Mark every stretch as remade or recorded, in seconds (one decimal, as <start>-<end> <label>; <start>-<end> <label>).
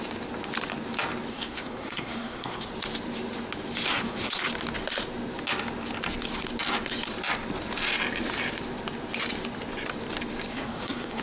0.0-1.3 recorded; 1.3-2.7 remade; 2.7-3.9 recorded; 3.9-4.4 remade; 4.4-10.5 recorded; 10.5-11.2 remade